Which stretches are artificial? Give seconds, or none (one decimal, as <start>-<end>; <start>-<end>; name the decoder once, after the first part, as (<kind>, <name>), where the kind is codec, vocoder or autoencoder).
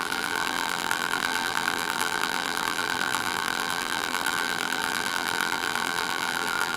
0.0-6.8 (vocoder, BigVGAN v2)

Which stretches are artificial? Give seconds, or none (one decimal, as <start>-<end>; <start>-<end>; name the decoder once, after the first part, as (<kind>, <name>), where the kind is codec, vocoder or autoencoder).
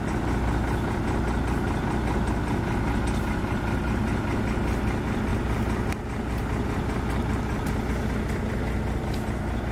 none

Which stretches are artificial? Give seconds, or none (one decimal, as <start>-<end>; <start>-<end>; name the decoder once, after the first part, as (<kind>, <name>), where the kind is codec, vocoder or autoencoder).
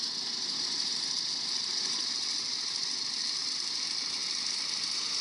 0.0-4.2 (vocoder, BigVGAN v2); 4.8-5.2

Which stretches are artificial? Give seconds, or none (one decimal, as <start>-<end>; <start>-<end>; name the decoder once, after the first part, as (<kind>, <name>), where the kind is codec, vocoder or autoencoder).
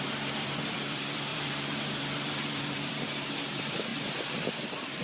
0.0-3.9 (vocoder, BigVGAN v2)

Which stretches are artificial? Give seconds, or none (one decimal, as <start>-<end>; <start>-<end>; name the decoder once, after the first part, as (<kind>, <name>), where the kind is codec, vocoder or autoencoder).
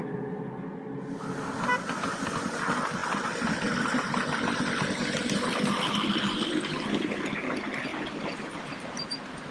7.9-9.5 (vocoder, BigVGAN v2)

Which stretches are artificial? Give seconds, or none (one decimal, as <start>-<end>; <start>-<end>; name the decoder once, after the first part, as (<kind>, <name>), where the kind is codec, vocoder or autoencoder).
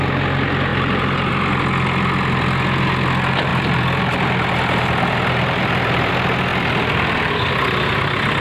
0.7-1.3 (vocoder, BigVGAN v2); 3.5-6.1; 6.5-7.5